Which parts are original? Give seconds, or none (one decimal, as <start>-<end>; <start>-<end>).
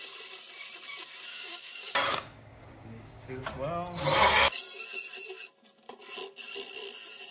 0.0-1.3; 3.4-7.3